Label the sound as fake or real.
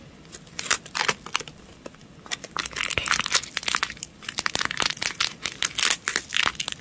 real